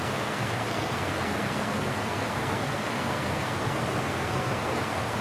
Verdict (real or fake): fake